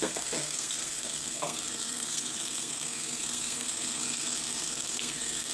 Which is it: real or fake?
fake